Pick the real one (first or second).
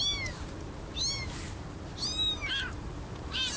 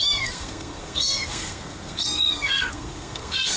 first